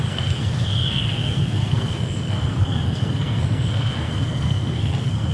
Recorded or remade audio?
remade